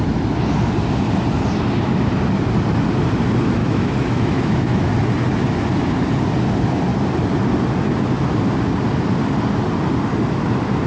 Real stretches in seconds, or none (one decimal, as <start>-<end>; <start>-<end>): 0.0-3.6; 4.9-10.9